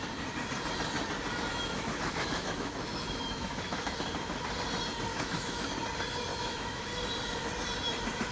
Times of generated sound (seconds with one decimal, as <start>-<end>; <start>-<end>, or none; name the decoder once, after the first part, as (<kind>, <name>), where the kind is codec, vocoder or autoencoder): 1.5-4.0 (autoencoder, DAC-VAE); 5.1-5.7; 6.3-7.0